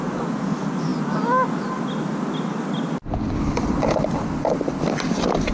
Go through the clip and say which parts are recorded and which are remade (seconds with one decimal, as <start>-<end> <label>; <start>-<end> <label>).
0.0-5.5 recorded